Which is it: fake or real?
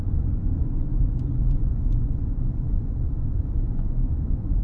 fake